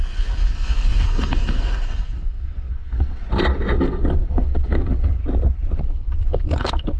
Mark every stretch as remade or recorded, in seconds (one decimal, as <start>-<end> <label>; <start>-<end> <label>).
0.0-3.2 remade; 3.2-3.8 recorded; 3.8-5.2 remade; 5.2-5.8 recorded; 5.8-7.0 remade